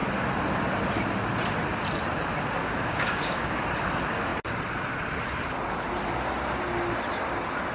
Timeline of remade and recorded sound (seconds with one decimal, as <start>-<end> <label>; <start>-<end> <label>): 0.0-2.6 recorded; 2.6-3.6 remade; 3.6-7.7 recorded

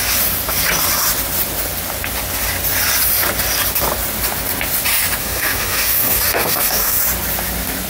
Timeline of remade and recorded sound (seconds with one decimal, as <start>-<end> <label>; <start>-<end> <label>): 0.0-5.2 recorded; 5.2-7.0 remade; 7.0-7.9 recorded

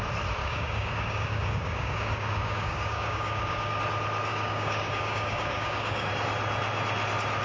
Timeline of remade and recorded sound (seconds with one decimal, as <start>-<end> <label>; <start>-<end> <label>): 0.0-0.4 recorded; 0.4-3.8 remade; 3.8-4.3 recorded; 4.3-6.1 remade; 6.1-7.4 recorded

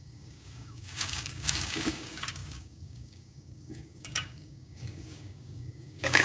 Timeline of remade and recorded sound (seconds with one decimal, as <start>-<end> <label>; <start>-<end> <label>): 0.0-6.2 remade

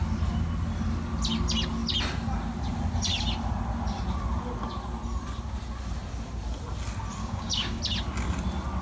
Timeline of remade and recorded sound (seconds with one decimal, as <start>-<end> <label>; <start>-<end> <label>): 0.0-7.2 recorded; 7.2-7.8 remade; 7.8-8.8 recorded

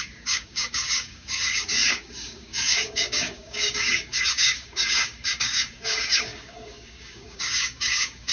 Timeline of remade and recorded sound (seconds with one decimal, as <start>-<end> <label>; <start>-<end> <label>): 0.0-8.3 remade